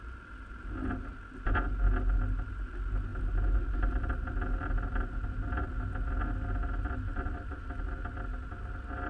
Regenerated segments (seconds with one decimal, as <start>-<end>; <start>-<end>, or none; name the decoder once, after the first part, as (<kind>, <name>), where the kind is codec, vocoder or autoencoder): none